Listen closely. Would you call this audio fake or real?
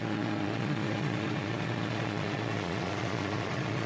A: fake